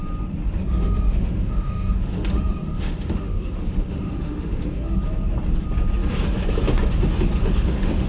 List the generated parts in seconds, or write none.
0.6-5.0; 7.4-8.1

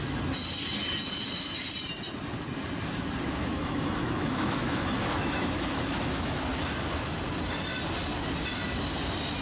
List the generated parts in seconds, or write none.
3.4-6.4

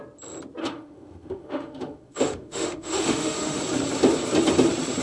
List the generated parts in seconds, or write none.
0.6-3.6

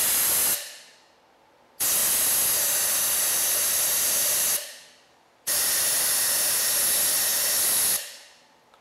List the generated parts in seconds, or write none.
none